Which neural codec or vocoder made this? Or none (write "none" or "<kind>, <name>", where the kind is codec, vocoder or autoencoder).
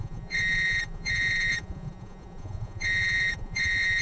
vocoder, Vocos